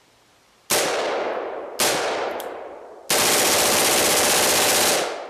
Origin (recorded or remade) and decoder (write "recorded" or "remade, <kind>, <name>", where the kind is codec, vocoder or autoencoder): recorded